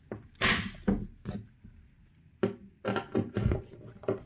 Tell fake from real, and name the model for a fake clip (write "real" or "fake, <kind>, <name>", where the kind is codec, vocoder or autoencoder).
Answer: real